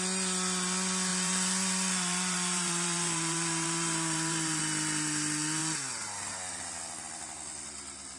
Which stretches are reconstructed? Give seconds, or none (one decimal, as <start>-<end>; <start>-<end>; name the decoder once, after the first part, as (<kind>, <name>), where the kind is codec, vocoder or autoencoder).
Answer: 1.1-4.6 (vocoder, BigVGAN v2); 5.6-6.3